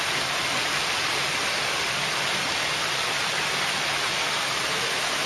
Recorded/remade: recorded